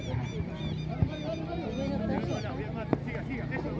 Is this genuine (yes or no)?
yes